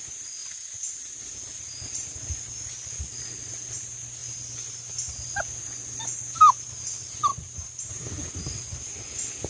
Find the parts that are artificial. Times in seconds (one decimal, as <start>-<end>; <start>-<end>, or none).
none

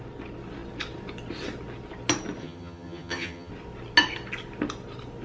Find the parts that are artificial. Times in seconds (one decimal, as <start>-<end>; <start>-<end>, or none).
2.4-3.5

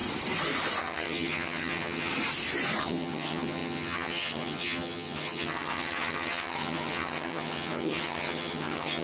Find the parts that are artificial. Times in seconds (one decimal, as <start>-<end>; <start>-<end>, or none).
0.8-2.1; 2.8-9.0

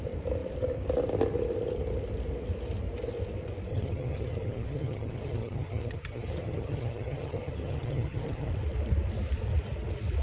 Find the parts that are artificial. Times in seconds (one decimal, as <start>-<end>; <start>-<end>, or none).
3.7-8.5

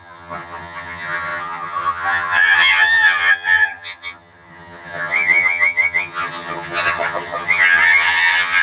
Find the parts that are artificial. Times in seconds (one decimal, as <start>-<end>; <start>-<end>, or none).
0.0-8.6